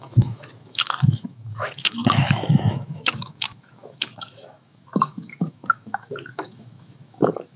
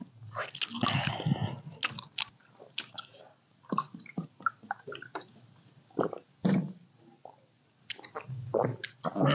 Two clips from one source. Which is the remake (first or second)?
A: first